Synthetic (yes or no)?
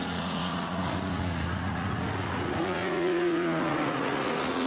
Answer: yes